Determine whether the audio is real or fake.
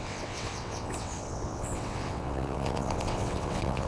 fake